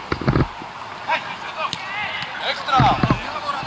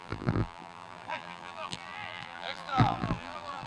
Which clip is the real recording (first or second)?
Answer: first